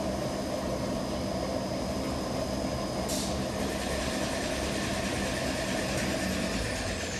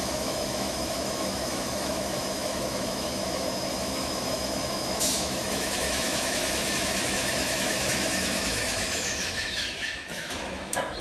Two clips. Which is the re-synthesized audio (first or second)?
second